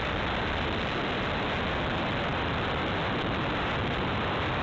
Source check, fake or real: real